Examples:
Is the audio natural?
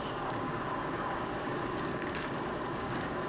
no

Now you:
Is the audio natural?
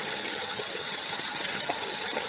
no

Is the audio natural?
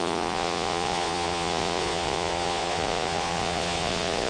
no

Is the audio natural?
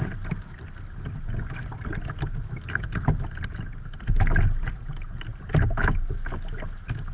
yes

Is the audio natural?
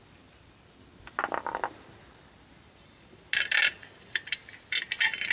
yes